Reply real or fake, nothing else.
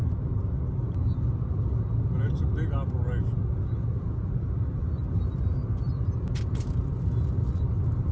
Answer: real